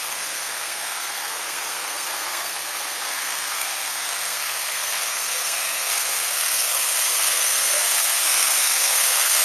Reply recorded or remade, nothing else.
remade